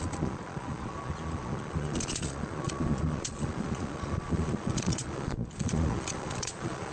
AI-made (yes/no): yes